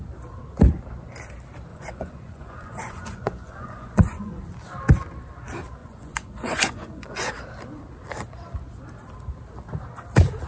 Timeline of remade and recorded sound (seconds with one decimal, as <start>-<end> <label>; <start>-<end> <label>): 0.0-1.7 recorded; 1.7-4.4 remade; 4.4-5.8 recorded; 5.8-7.3 remade; 7.3-10.5 recorded